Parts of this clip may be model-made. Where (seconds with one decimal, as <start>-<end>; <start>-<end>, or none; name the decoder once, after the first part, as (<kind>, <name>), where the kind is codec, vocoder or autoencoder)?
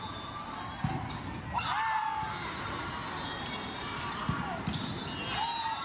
none